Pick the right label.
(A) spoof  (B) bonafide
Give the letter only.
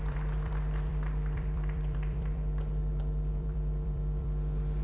A